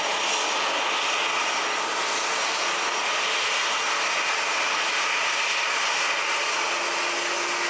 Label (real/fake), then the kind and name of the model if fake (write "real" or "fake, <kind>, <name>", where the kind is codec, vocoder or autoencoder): real